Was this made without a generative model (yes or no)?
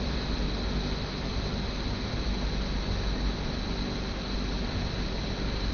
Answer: yes